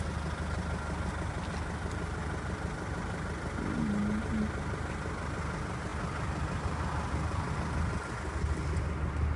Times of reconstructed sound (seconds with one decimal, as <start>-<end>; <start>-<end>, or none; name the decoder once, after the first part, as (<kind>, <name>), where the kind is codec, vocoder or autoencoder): none